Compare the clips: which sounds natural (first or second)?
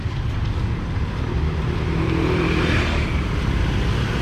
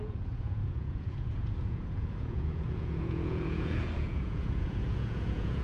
first